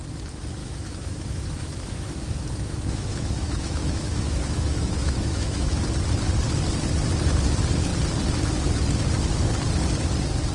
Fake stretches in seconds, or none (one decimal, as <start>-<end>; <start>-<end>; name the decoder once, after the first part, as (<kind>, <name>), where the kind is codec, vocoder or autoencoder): 0.6-5.8 (autoencoder, DAC-VAE)